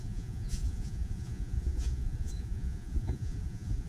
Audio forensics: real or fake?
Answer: fake